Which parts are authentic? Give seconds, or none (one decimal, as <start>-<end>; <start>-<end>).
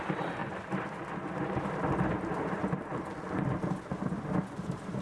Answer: 0.4-2.1; 2.6-4.6